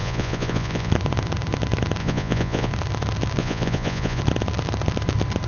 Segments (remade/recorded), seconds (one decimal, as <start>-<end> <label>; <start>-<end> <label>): 0.0-0.9 remade; 0.9-2.0 recorded; 2.0-2.7 remade; 2.7-3.4 recorded; 3.4-4.2 remade; 4.2-5.5 recorded

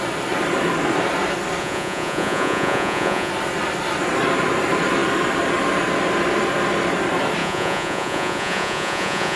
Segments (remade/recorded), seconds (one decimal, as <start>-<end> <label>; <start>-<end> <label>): 0.0-1.6 recorded; 1.6-3.3 remade; 3.3-7.4 recorded; 7.4-9.4 remade

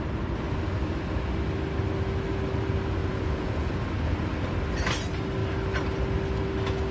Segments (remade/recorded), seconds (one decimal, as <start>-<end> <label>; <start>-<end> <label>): 0.0-3.0 recorded; 3.0-3.7 remade; 3.7-6.9 recorded

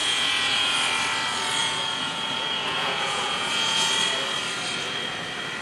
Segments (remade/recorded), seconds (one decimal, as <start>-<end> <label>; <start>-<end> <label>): 0.0-0.7 remade; 0.7-1.6 recorded; 1.6-3.9 remade; 3.9-5.6 recorded

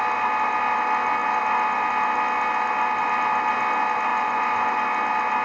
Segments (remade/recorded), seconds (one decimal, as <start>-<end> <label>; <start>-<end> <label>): 0.0-4.1 recorded; 4.1-4.8 remade; 4.8-5.4 recorded

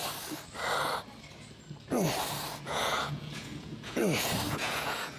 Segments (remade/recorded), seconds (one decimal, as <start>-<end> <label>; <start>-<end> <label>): 0.0-2.6 recorded; 2.6-4.0 remade; 4.0-4.5 recorded; 4.5-5.2 remade